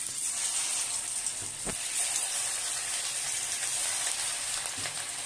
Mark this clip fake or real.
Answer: fake